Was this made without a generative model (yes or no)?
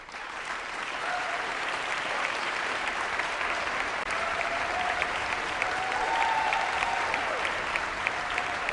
no